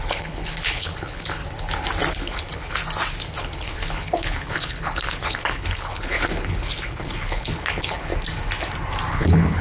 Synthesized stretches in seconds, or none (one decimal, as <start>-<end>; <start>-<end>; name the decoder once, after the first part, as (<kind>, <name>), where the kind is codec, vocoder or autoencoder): 0.0-1.4 (codec, HILCodec); 2.1-2.8; 3.4-8.1; 9.1-9.6